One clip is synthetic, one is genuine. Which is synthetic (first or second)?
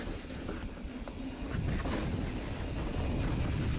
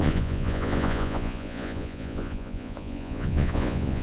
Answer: second